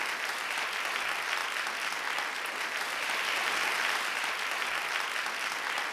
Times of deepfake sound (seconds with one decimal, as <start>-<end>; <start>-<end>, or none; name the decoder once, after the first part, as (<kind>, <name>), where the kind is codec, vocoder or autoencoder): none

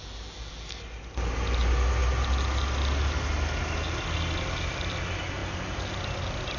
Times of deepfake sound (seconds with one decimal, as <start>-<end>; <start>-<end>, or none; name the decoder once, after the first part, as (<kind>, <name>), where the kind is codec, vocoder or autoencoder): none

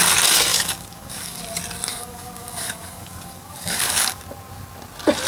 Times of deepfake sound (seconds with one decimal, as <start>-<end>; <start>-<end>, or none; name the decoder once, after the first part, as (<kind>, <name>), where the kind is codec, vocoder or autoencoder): 0.5-1.4 (codec, DAC); 1.9-4.2